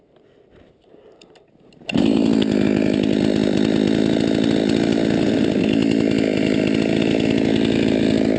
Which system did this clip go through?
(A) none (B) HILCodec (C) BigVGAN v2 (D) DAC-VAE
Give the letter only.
A